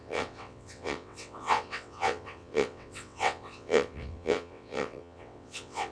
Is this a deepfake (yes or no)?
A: yes